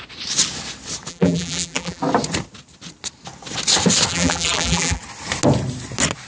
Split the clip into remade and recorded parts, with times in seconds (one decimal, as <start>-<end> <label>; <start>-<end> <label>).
0.0-1.1 recorded; 1.1-2.0 remade; 2.0-4.1 recorded; 4.1-5.0 remade; 5.0-6.3 recorded